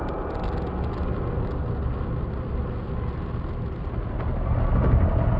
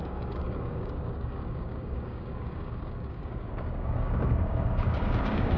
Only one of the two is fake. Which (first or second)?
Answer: second